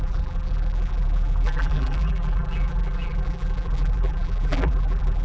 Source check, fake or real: fake